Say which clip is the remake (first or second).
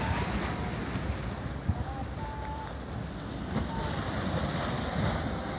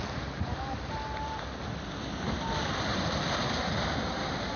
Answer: second